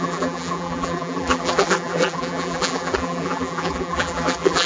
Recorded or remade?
remade